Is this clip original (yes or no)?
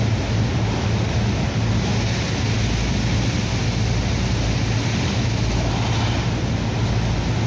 yes